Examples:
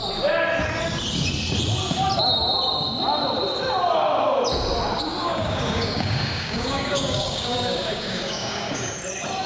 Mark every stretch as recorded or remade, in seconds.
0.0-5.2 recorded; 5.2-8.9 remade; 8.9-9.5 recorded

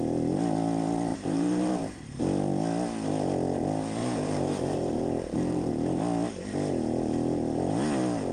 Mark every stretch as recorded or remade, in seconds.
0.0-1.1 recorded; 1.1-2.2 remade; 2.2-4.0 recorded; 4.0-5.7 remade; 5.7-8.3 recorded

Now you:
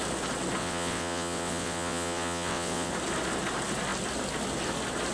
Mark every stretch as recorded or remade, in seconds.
0.0-0.6 recorded; 0.6-2.9 remade; 2.9-5.1 recorded

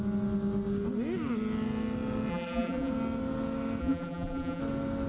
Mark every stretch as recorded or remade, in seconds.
0.0-2.3 recorded; 2.3-2.9 remade; 2.9-3.8 recorded; 3.8-4.6 remade; 4.6-5.1 recorded

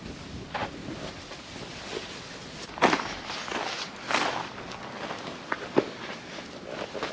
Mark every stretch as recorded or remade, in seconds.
0.0-7.1 recorded

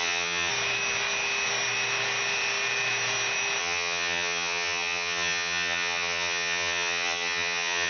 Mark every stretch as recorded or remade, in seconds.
0.0-0.5 remade; 0.5-3.6 recorded; 3.6-7.9 remade

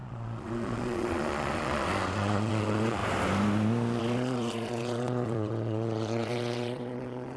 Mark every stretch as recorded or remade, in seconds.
0.0-3.0 remade; 3.0-4.0 recorded; 4.0-7.4 remade